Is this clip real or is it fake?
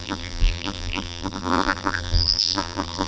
fake